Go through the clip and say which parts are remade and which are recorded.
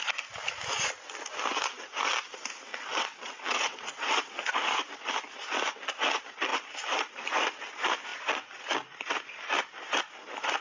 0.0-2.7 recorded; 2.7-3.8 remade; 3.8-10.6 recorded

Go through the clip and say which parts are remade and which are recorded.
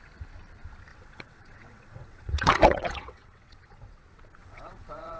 0.0-0.9 recorded; 0.9-4.0 remade; 4.0-4.4 recorded; 4.4-5.2 remade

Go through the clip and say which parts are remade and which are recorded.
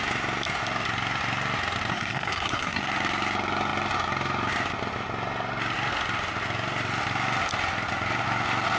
0.0-1.9 recorded; 1.9-2.8 remade; 2.8-8.8 recorded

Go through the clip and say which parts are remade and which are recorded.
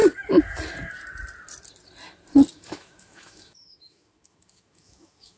0.0-2.5 recorded; 2.5-5.4 remade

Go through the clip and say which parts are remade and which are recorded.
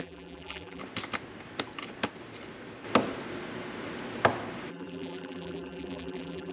0.0-0.8 remade; 0.8-4.7 recorded; 4.7-6.5 remade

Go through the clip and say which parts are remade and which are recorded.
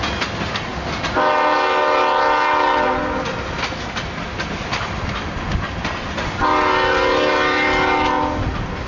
0.0-8.9 recorded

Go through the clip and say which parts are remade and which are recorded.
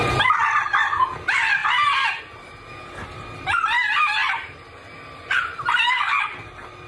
0.0-6.9 recorded